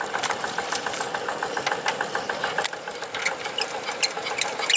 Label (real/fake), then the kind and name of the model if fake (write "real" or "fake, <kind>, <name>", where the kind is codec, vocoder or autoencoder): real